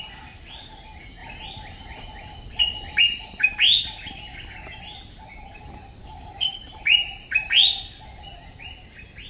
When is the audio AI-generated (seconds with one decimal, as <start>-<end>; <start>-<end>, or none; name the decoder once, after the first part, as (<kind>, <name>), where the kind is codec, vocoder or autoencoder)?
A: 4.3-4.8 (codec, DAC); 6.0-6.6